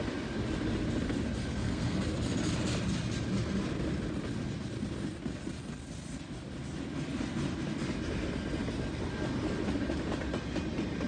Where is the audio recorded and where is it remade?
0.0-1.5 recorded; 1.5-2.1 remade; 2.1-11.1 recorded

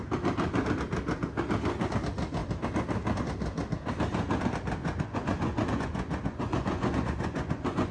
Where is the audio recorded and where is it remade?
0.0-4.8 recorded; 4.8-7.9 remade

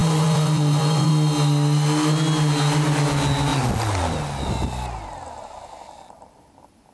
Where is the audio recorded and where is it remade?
0.0-1.1 remade; 1.1-6.9 recorded

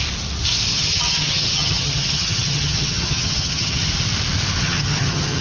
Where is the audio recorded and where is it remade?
0.0-0.7 recorded; 0.7-3.9 remade; 3.9-4.6 recorded; 4.6-5.4 remade

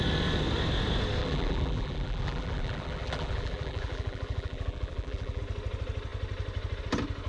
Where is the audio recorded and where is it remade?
0.0-1.2 recorded; 1.2-5.4 remade; 5.4-7.3 recorded